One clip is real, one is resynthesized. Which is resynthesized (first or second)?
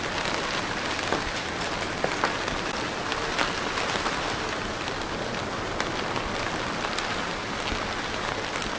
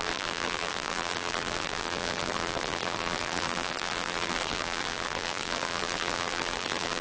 second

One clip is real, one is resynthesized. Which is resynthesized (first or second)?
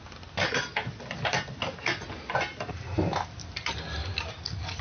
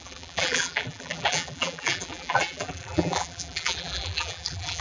second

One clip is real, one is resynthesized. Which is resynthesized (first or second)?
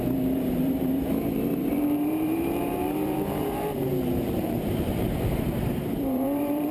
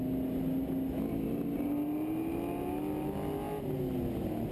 first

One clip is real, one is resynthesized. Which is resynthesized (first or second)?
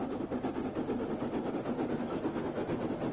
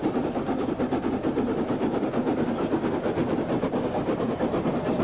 second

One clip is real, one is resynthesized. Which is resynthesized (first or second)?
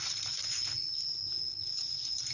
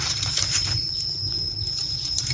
second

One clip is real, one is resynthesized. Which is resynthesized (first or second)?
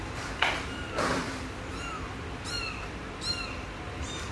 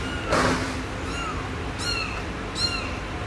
first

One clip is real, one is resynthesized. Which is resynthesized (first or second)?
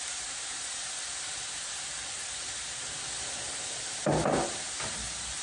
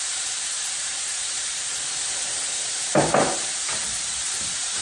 second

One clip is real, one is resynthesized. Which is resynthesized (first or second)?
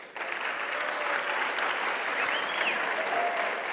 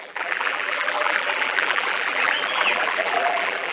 second